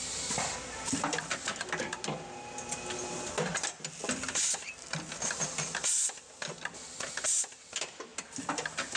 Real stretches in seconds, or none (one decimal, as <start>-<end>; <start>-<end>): 0.0-9.0